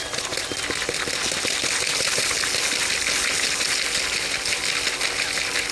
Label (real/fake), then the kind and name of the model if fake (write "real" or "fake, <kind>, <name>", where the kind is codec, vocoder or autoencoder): real